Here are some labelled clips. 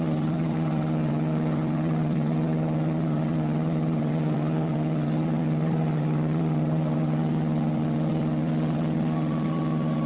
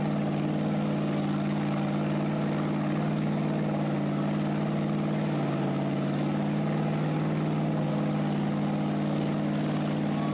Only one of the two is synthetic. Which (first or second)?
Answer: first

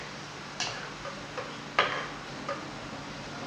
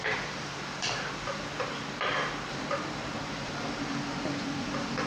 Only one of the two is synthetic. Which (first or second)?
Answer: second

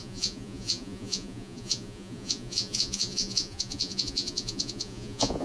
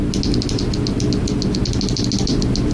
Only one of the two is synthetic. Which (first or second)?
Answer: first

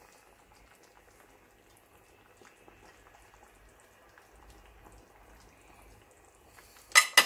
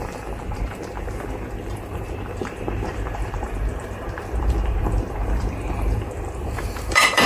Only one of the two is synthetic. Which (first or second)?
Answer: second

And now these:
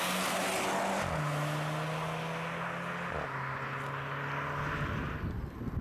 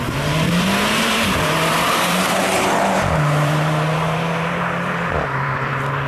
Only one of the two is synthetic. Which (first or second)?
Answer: second